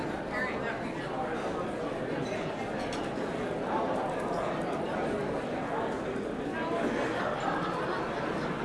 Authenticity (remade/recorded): recorded